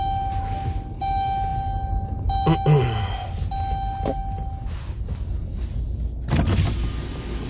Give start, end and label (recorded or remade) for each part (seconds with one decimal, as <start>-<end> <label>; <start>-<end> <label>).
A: 0.0-7.5 recorded